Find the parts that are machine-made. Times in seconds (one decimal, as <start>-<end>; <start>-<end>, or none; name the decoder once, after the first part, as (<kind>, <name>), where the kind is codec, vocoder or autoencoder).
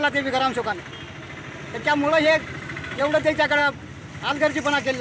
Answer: none